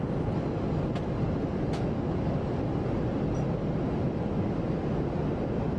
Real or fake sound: real